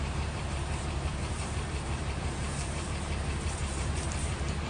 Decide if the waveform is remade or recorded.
remade